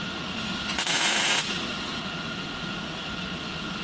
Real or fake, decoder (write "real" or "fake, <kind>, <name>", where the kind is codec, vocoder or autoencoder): fake, vocoder, Vocos